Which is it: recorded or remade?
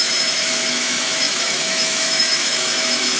remade